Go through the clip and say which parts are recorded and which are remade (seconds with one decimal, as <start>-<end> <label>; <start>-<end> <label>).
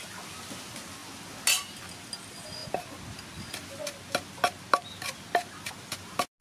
0.0-6.4 recorded